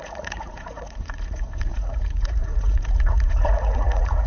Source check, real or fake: fake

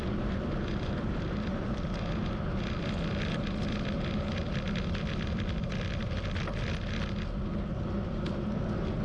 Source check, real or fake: real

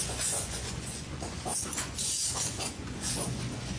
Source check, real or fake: fake